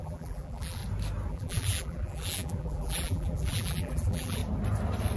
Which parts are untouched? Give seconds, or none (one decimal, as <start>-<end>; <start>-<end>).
0.8-1.3; 4.4-5.2